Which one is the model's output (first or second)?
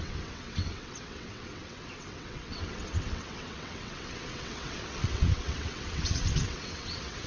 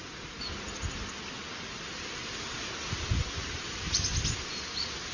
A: first